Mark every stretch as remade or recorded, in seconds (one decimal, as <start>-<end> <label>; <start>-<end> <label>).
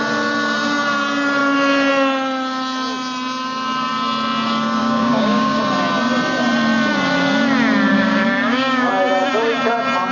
0.0-4.8 recorded; 4.8-5.6 remade; 5.6-7.9 recorded; 7.9-8.9 remade; 8.9-10.1 recorded